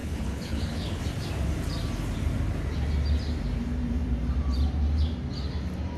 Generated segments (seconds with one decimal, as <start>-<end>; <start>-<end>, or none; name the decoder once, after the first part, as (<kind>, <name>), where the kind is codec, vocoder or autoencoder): 0.0-1.0 (codec, HILCodec)

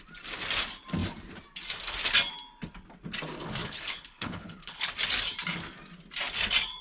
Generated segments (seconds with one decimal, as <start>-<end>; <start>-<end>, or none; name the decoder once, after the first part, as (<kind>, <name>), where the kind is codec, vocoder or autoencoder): 3.6-4.9 (codec, HILCodec)